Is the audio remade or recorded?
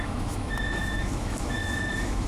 remade